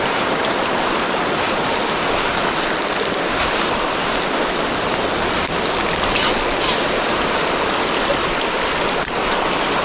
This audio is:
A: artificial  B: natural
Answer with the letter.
B